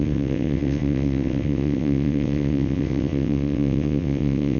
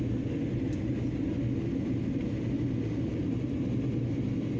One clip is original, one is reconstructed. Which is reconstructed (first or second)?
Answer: first